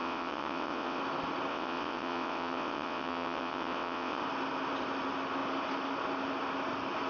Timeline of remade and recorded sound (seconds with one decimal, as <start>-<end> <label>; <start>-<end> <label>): 0.0-1.0 remade; 1.0-1.5 recorded; 1.5-4.2 remade; 4.2-7.1 recorded